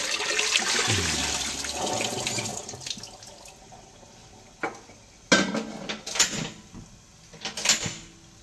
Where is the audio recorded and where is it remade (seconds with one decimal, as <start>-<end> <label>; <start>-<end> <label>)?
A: 0.0-8.4 recorded